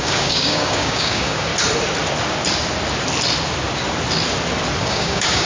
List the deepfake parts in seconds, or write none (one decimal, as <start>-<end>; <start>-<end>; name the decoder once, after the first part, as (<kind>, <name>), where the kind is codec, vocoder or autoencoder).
0.0-1.5 (codec, DAC); 4.8-5.5